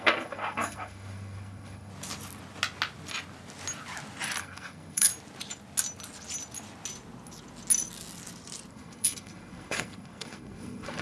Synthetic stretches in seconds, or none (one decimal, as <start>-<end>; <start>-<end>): 0.0-1.9; 4.4-5.1; 8.7-11.0